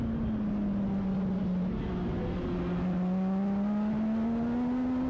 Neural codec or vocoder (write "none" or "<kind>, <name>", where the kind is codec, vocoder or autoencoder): none